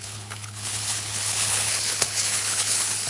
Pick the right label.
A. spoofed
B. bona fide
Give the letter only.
A